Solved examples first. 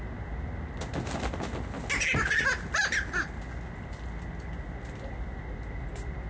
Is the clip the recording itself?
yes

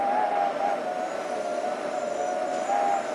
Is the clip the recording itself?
yes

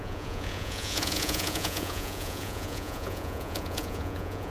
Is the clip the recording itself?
no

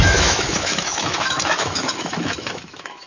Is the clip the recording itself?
no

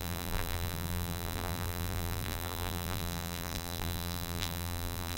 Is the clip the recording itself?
no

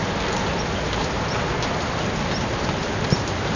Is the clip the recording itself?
yes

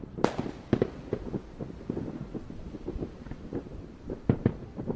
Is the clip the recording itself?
no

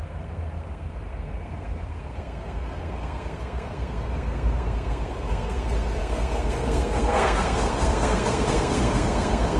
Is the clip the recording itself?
no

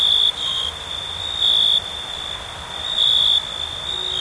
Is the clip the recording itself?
yes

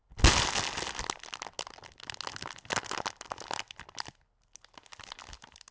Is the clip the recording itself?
yes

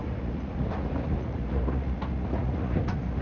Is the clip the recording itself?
no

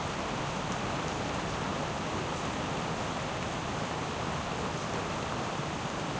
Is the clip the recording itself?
yes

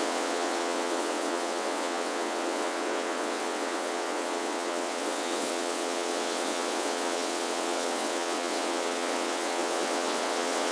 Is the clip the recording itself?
no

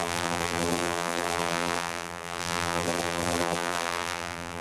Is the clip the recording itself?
no